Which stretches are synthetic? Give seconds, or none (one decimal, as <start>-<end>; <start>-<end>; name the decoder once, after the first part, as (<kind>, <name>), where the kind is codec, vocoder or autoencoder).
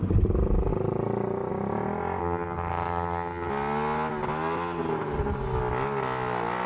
2.2-3.5 (vocoder, HiFi-GAN)